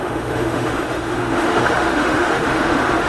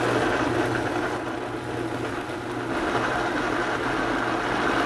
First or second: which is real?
second